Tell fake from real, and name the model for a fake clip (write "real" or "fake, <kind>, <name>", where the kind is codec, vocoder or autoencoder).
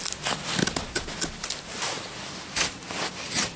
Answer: real